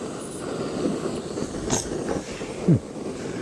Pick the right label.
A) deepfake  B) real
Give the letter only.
B